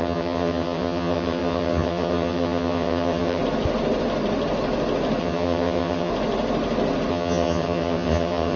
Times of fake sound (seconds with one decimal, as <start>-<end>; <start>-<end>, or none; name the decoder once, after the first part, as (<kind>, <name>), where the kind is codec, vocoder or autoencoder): 0.0-3.4 (vocoder, HiFi-GAN); 5.2-6.1; 7.1-8.6